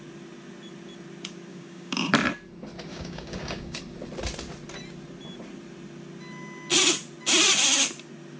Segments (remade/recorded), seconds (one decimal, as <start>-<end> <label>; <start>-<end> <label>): 0.0-1.5 recorded; 1.5-2.1 remade; 2.1-2.9 recorded; 2.9-3.8 remade; 3.8-8.4 recorded